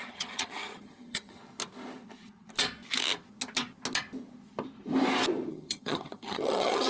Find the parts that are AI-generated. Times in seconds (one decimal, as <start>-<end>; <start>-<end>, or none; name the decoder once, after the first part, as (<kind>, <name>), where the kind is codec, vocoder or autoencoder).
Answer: 0.0-1.4 (vocoder, HiFi-GAN); 5.5-6.9